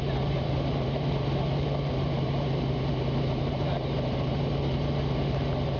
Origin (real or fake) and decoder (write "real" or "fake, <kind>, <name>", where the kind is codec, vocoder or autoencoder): fake, vocoder, BigVGAN v2